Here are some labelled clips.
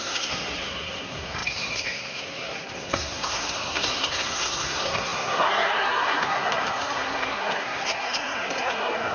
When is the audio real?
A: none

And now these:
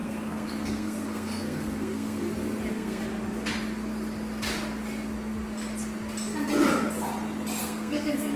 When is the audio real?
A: 2.2-2.7; 3.1-7.6

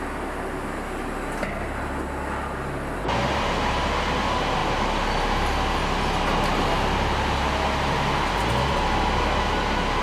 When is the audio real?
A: 0.0-10.0